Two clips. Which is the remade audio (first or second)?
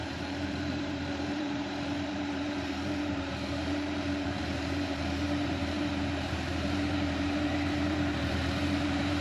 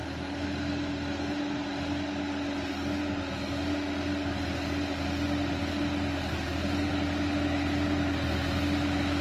first